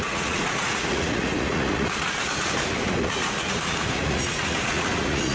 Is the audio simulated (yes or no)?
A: yes